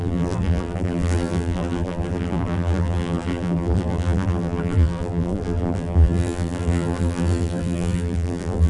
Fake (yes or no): yes